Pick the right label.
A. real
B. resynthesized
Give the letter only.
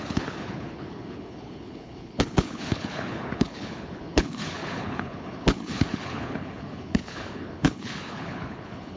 B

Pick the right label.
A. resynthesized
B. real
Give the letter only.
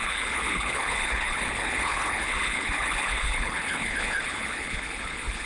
A